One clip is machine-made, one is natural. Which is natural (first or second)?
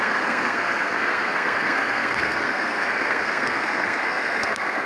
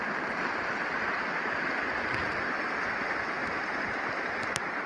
second